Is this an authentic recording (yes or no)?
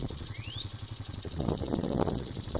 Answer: no